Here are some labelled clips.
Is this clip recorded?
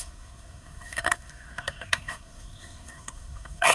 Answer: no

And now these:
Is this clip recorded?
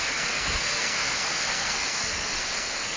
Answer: no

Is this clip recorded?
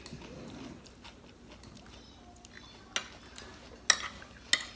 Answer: yes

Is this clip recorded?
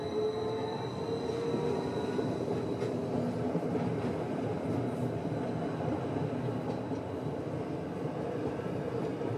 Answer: yes